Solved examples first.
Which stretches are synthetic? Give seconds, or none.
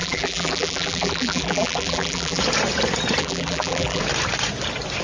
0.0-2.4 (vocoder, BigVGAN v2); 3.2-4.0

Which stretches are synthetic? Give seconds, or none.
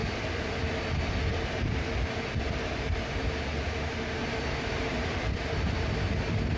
0.0-1.8 (vocoder, BigVGAN v2); 4.2-5.9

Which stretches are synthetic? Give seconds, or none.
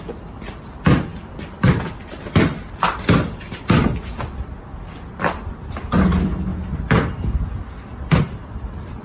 0.0-6.5 (vocoder, BigVGAN v2); 8.2-9.0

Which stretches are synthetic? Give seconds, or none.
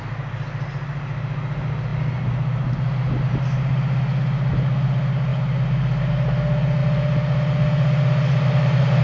none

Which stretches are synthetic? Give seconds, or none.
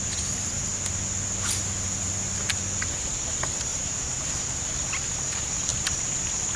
3.7-4.3 (vocoder, BigVGAN v2)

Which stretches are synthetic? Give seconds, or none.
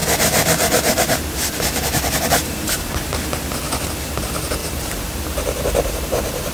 0.0-3.9 (vocoder, BigVGAN v2); 4.6-5.2